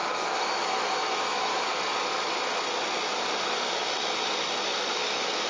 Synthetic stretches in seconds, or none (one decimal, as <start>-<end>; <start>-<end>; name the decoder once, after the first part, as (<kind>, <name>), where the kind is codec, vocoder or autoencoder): 0.0-1.7 (autoencoder, DAC-VAE); 4.9-5.5